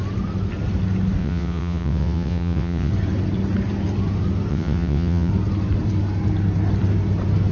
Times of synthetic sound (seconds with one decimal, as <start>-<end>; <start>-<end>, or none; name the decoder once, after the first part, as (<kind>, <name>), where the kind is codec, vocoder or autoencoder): 1.2-2.9 (vocoder, WaveNeXt); 4.5-5.3